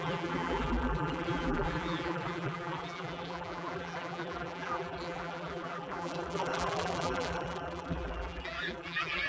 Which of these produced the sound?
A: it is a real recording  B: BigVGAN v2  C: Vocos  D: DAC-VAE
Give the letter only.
B